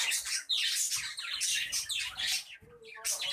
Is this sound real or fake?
real